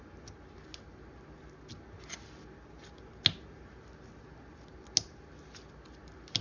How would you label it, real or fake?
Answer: real